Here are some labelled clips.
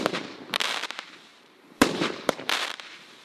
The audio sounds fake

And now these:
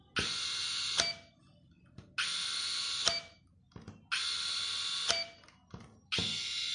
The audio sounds real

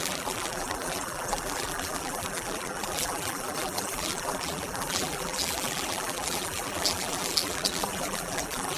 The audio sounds fake